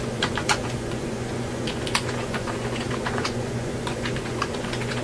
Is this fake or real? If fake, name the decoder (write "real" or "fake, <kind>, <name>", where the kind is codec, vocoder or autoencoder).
fake, vocoder, Vocos